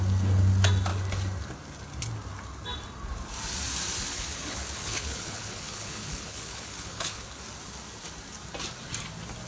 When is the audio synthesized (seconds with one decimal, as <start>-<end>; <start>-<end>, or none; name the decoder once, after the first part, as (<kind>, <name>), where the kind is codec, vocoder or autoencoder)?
4.1-7.4 (codec, HILCodec)